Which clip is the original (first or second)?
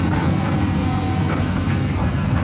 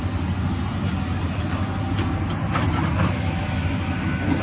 second